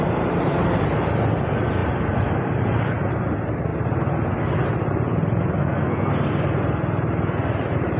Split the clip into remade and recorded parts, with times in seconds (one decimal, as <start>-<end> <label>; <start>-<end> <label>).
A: 0.0-5.6 recorded; 5.6-6.1 remade; 6.1-8.0 recorded